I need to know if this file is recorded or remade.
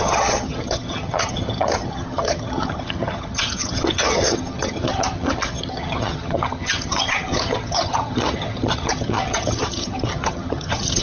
remade